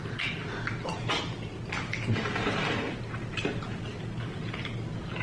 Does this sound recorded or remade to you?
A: recorded